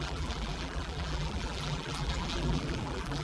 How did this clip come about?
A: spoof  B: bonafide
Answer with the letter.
A